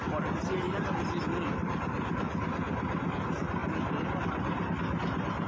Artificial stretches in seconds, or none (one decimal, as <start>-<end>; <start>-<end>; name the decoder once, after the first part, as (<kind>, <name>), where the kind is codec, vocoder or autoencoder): none